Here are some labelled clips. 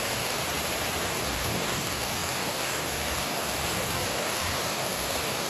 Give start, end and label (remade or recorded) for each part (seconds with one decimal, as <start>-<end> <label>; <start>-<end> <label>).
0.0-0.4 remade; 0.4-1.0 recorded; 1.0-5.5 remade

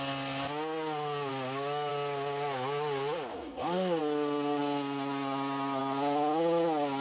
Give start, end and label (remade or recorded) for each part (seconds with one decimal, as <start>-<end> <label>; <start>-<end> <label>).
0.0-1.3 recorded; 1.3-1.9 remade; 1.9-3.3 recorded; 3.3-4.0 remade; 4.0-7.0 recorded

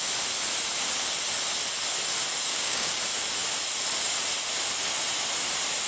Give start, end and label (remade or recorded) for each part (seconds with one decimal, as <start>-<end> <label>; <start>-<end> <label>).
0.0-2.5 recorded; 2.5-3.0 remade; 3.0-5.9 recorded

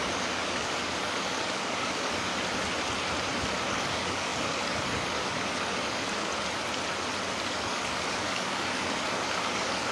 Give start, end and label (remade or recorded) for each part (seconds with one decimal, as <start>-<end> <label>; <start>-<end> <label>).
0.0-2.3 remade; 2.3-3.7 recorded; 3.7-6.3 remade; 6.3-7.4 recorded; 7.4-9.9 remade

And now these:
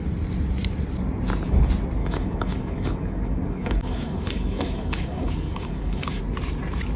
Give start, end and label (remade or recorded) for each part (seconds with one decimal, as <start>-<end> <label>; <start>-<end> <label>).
0.0-2.0 recorded; 2.0-6.2 remade; 6.2-7.0 recorded

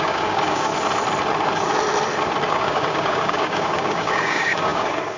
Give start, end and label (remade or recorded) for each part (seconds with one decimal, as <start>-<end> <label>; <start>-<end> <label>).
0.0-0.7 remade; 0.7-2.5 recorded; 2.5-5.2 remade